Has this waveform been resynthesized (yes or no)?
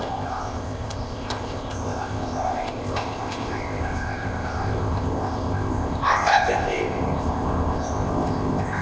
yes